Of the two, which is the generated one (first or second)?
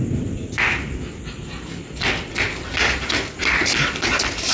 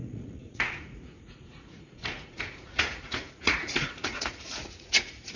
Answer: second